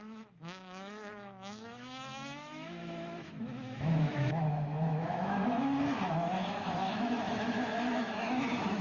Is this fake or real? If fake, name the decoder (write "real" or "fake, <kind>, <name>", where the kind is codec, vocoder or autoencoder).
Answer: fake, autoencoder, DAC-VAE